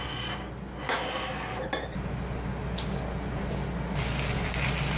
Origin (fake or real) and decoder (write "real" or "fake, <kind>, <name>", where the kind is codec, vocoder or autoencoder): real